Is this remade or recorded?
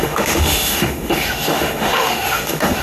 remade